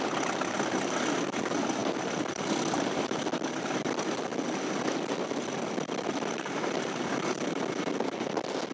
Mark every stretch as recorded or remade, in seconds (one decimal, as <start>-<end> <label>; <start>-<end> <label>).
0.0-4.3 recorded; 4.3-7.7 remade; 7.7-8.7 recorded